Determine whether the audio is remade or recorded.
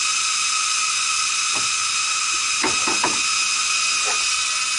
recorded